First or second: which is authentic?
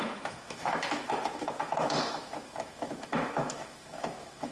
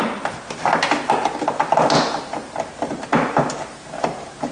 second